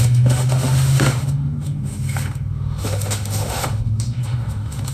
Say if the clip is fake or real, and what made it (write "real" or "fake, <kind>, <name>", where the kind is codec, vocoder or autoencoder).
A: fake, autoencoder, DAC-VAE